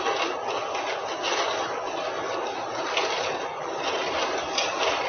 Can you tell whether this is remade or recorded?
recorded